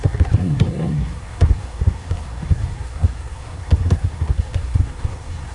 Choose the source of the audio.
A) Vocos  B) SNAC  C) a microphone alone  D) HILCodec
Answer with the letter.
B